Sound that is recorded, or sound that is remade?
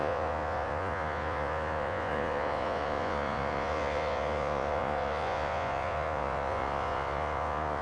remade